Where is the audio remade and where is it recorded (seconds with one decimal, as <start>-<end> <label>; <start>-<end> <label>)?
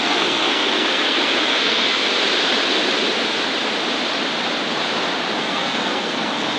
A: 0.0-2.1 remade; 2.1-5.4 recorded; 5.4-6.6 remade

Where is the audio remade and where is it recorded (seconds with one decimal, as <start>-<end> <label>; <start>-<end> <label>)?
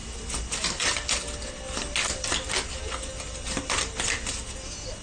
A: 0.0-5.0 recorded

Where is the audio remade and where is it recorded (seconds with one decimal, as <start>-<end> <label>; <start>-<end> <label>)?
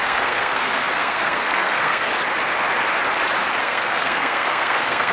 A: 0.0-2.1 remade; 2.1-3.6 recorded; 3.6-5.1 remade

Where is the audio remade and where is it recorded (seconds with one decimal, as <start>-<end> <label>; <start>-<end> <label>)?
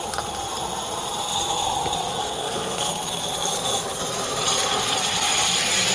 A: 0.0-2.2 recorded; 2.2-2.9 remade; 2.9-5.9 recorded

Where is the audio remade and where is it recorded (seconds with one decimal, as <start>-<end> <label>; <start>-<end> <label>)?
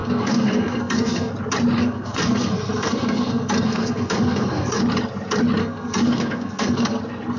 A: 0.0-1.3 remade; 1.3-1.8 recorded; 1.8-4.8 remade; 4.8-5.6 recorded; 5.6-7.0 remade; 7.0-7.4 recorded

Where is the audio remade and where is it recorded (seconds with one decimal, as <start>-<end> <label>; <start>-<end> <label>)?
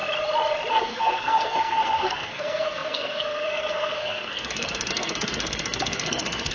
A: 0.0-0.7 recorded; 0.7-6.5 remade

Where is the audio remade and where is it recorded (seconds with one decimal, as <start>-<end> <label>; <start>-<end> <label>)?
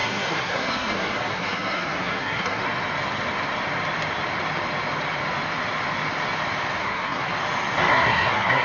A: 0.0-2.6 remade; 2.6-6.8 recorded; 6.8-7.3 remade; 7.3-7.9 recorded; 7.9-8.6 remade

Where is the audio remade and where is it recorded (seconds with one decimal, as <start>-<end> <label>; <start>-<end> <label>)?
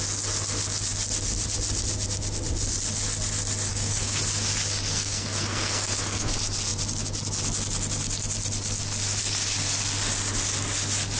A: 0.0-3.7 recorded; 3.7-4.2 remade; 4.2-4.9 recorded; 4.9-6.3 remade; 6.3-11.2 recorded